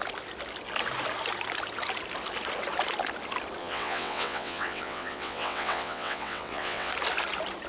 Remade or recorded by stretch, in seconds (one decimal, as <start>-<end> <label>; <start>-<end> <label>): 0.0-3.6 recorded; 3.6-6.9 remade; 6.9-7.7 recorded

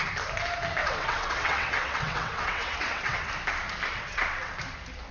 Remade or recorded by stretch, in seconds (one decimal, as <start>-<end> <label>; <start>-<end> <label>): 0.0-0.8 recorded; 0.8-3.3 remade; 3.3-3.9 recorded; 3.9-4.5 remade; 4.5-5.1 recorded

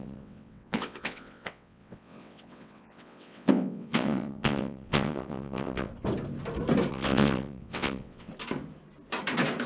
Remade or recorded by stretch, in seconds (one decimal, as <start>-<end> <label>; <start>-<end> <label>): 0.0-5.9 remade; 5.9-6.9 recorded; 6.9-8.3 remade; 8.3-9.7 recorded

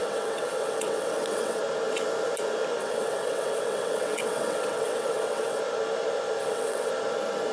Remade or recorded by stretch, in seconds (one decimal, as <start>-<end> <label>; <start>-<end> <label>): 0.0-1.6 remade; 1.6-2.8 recorded; 2.8-5.6 remade; 5.6-6.4 recorded; 6.4-6.9 remade; 6.9-7.5 recorded

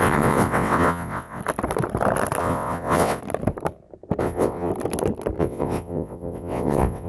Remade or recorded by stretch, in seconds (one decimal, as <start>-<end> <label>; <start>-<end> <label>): 0.0-1.4 remade; 1.4-2.4 recorded; 2.4-3.2 remade; 3.2-4.2 recorded; 4.2-4.7 remade; 4.7-5.4 recorded; 5.4-7.1 remade